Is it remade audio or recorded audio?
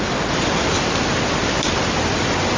remade